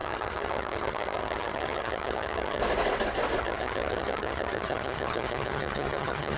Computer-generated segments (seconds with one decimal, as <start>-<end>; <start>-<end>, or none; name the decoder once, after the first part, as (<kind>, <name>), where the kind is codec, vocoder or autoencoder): 0.0-2.6 (vocoder, HiFi-GAN); 3.4-6.4